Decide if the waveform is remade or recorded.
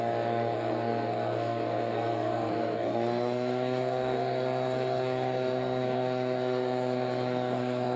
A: remade